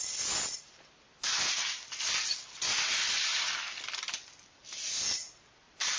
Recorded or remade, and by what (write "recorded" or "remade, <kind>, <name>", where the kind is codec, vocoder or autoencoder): recorded